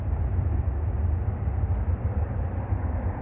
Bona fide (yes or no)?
yes